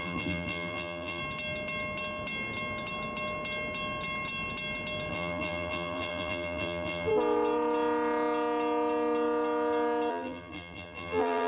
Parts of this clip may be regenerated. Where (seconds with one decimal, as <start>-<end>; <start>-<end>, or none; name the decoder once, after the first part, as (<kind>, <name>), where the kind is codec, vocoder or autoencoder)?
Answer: 0.0-1.2 (vocoder, BigVGAN v2); 5.1-7.1; 10.1-11.5